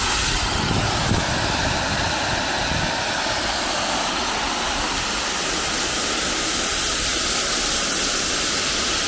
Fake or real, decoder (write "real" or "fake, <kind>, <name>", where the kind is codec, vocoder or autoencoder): real